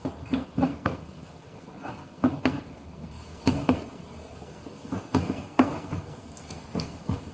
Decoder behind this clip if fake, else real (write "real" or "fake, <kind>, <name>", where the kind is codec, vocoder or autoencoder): fake, codec, SNAC